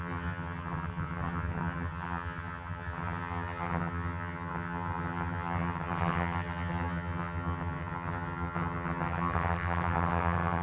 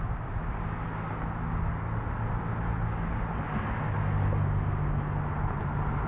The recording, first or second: second